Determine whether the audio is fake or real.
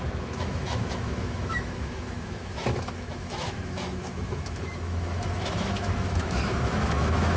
fake